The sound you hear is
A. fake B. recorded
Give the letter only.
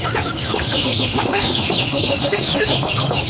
A